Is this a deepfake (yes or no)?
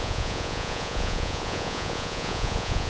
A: yes